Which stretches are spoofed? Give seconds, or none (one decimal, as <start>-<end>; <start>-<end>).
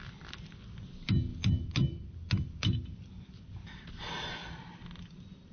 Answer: none